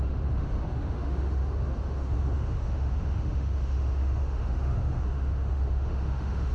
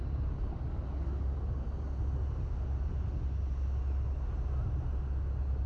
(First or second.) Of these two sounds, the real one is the second